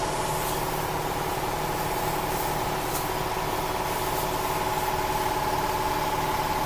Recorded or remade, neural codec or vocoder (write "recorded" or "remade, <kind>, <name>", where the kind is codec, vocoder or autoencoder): recorded